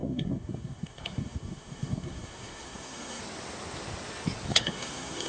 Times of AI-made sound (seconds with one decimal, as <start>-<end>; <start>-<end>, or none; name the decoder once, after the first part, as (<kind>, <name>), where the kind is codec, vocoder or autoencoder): 0.0-3.2 (codec, SNAC); 4.5-5.3